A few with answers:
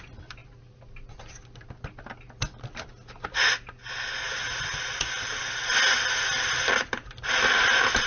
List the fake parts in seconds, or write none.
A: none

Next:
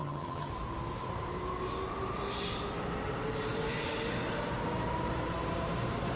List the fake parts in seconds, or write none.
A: 0.0-0.5 (vocoder, HiFi-GAN)

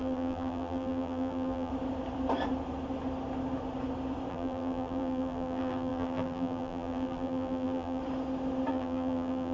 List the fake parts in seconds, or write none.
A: 0.0-1.7 (vocoder, BigVGAN v2); 4.3-8.0; 8.7-9.5

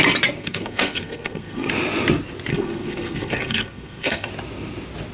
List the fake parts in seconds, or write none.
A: 0.4-1.7 (codec, SNAC); 2.5-4.3

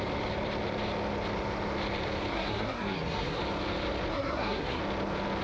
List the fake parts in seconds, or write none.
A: 2.3-3.4 (codec, SNAC); 4.1-4.8

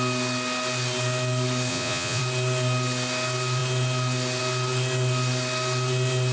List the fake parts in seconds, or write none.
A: 1.7-2.2 (vocoder, Vocos)